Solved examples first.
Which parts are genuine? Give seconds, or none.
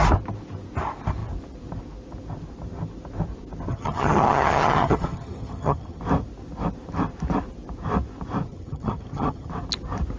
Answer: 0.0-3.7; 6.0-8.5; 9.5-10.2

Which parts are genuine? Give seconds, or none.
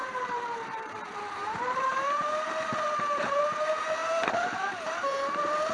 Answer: none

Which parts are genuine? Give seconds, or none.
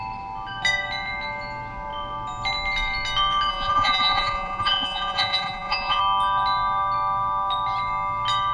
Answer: 0.0-3.5; 6.0-8.5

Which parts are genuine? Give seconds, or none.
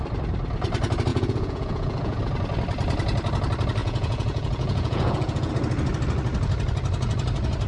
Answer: 0.0-1.1; 2.2-3.8; 5.5-7.7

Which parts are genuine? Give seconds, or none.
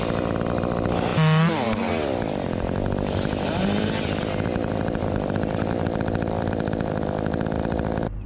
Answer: 0.0-1.1; 4.2-5.0; 6.9-8.3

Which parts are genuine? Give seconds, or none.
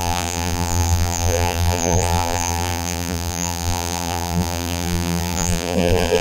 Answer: none